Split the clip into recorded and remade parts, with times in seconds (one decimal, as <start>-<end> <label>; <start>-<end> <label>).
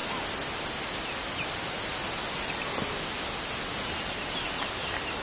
0.0-5.2 recorded